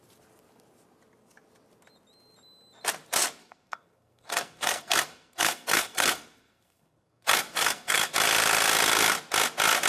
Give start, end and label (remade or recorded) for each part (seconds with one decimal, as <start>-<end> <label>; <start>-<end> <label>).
0.0-3.4 recorded; 3.4-8.1 remade; 8.1-9.9 recorded